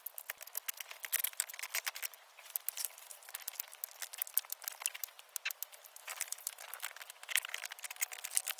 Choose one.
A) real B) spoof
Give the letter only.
A